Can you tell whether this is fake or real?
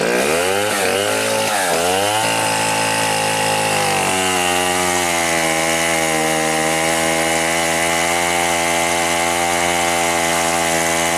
real